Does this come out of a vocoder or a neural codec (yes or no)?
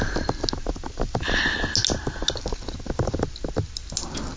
no